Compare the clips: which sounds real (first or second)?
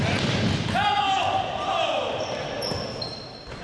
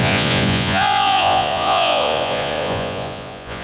first